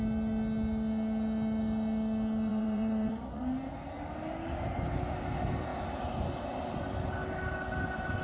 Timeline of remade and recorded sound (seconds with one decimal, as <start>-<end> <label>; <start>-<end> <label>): 0.0-2.5 recorded; 2.5-3.4 remade; 3.4-8.2 recorded